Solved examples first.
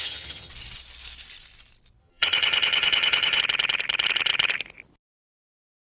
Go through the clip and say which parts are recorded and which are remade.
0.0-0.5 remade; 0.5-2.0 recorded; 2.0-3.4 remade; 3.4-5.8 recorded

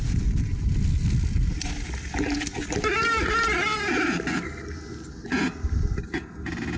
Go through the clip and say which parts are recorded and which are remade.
0.0-6.8 recorded

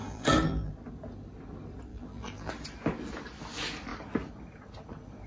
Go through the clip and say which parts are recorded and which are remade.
0.0-0.7 remade; 0.7-1.9 recorded; 1.9-2.5 remade; 2.5-5.3 recorded

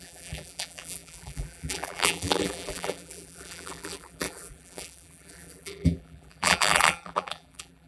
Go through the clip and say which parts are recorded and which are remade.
0.0-7.9 remade

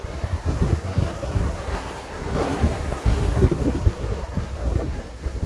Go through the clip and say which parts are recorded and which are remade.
0.0-5.5 remade

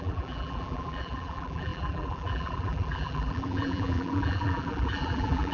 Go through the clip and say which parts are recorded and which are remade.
0.0-5.5 remade

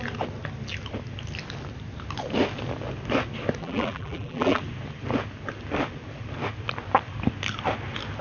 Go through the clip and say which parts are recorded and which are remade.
0.0-3.6 recorded; 3.6-4.6 remade; 4.6-8.2 recorded

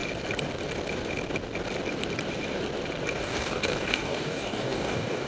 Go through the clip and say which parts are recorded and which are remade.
0.0-3.2 recorded; 3.2-5.3 remade